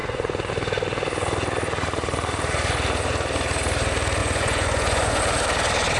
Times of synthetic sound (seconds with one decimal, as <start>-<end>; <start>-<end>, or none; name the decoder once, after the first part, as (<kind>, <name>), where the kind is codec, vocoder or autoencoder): 0.0-0.5 (vocoder, Vocos); 4.2-5.2

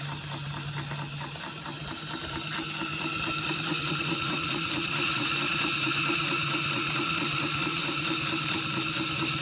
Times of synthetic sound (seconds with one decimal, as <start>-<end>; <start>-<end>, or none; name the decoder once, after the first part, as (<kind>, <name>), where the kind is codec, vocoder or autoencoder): 3.7-8.1 (vocoder, Vocos)

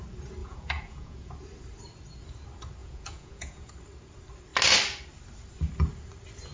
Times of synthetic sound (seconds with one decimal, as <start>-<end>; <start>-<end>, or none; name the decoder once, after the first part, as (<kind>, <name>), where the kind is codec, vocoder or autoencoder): 0.4-1.3 (vocoder, Vocos); 2.8-3.7

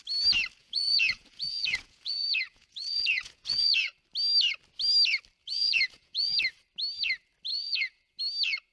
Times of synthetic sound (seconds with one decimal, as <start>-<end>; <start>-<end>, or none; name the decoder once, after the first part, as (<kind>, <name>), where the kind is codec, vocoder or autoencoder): 0.6-4.0 (vocoder, Vocos); 5.4-6.4; 7.5-8.2

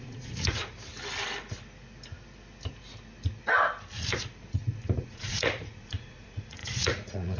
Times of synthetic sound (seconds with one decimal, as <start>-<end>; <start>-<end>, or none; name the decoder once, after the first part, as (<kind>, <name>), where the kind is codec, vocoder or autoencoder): 0.0-0.6 (vocoder, Vocos); 5.0-7.4

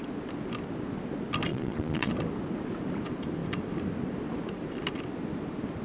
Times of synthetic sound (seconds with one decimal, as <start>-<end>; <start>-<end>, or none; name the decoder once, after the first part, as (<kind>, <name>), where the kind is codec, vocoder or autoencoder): 1.5-2.1 (vocoder, Vocos)

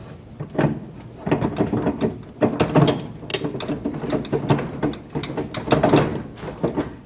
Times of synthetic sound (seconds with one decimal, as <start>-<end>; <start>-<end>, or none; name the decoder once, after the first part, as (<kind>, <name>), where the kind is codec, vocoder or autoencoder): none

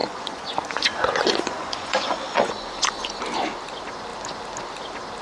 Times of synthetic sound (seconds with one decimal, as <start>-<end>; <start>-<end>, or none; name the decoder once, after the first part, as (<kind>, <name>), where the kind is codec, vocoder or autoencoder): 0.0-3.1 (vocoder, Vocos)